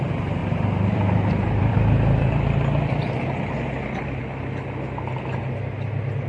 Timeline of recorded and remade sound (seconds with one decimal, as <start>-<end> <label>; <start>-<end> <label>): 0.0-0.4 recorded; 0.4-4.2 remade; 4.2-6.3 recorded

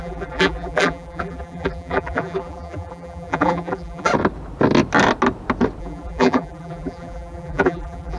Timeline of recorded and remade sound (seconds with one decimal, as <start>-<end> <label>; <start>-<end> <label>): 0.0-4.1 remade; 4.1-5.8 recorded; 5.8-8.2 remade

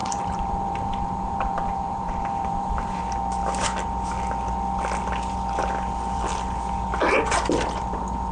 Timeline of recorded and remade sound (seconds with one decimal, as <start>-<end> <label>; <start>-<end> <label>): 0.0-3.0 remade; 3.0-8.3 recorded

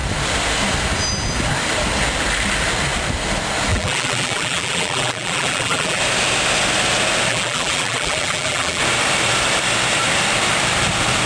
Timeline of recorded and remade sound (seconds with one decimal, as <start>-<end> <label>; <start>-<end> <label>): 0.0-3.7 recorded; 3.7-6.0 remade; 6.0-7.3 recorded; 7.3-8.8 remade; 8.8-11.3 recorded